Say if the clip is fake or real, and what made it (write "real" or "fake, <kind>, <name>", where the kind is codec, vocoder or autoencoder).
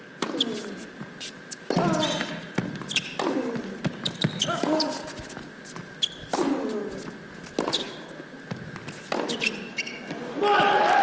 real